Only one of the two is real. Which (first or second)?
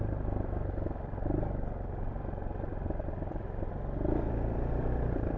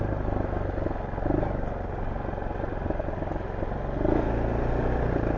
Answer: second